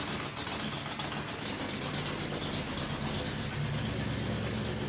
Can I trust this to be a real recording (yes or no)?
yes